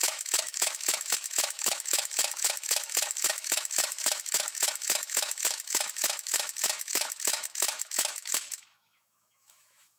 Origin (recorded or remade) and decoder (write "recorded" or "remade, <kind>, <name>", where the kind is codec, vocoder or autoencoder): remade, autoencoder, DAC-VAE